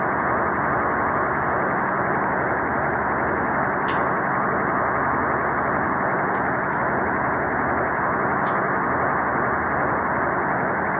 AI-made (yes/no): no